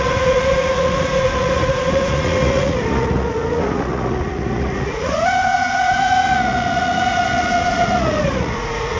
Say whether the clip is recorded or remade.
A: remade